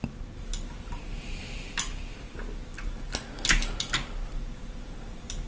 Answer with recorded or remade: recorded